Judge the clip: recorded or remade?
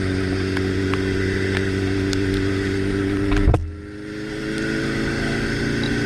recorded